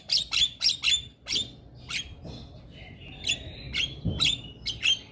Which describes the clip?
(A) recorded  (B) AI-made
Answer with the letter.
A